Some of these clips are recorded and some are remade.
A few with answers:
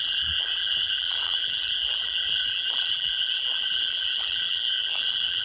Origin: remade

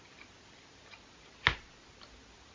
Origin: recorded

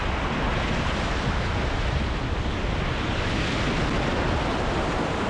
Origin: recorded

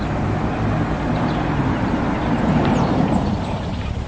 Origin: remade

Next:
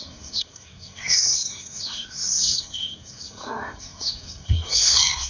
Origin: remade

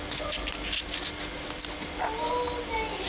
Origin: recorded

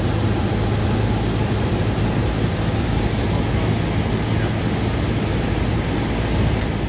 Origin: recorded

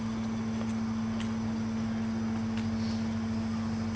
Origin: recorded